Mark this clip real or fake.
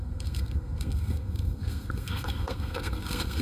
fake